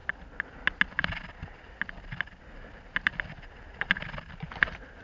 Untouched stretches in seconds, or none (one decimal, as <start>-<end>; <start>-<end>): 0.0-5.0